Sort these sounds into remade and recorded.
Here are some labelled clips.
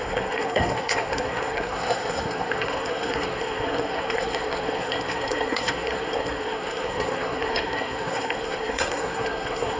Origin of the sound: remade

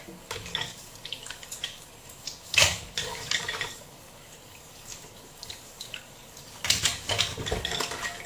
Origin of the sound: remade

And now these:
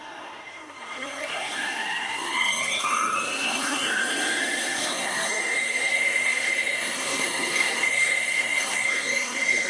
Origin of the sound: remade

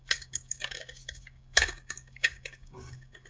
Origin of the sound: remade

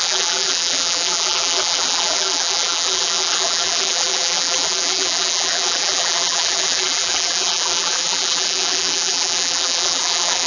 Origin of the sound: remade